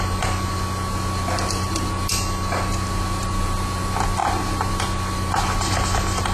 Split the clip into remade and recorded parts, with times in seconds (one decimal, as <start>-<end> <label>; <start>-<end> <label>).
0.0-6.3 recorded